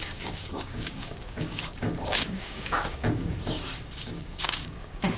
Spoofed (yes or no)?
yes